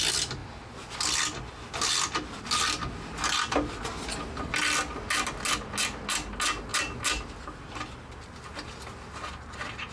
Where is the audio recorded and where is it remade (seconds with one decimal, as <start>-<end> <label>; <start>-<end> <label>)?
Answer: 0.0-6.7 recorded; 6.7-8.4 remade; 8.4-9.9 recorded